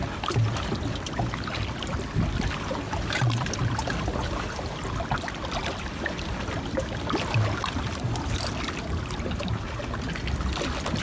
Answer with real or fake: real